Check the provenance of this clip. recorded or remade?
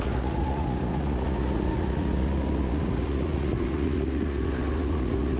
remade